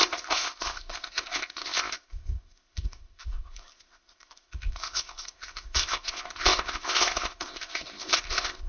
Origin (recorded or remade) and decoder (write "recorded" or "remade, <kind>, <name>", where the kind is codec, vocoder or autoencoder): remade, codec, ZipCodec